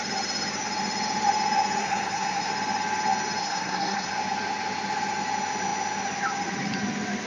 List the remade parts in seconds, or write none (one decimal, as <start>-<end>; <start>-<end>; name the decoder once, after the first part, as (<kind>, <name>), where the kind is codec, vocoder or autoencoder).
1.8-2.5 (codec, SNAC); 3.4-4.1